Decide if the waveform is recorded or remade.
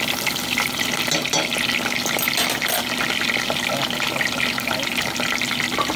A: recorded